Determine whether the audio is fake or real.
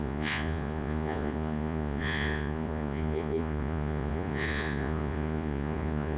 fake